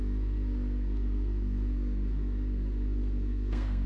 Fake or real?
fake